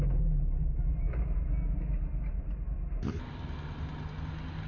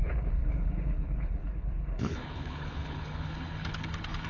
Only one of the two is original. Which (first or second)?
first